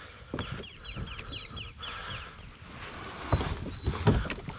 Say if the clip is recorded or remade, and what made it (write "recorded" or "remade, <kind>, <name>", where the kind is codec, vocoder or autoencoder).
recorded